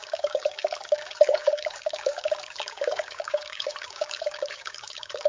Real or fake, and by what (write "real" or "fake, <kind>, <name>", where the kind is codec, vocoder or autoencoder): fake, codec, DAC